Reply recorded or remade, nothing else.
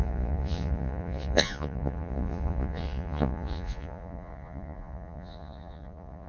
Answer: remade